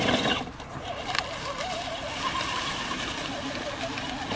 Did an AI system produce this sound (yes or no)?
no